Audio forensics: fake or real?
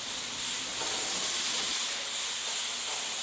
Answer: real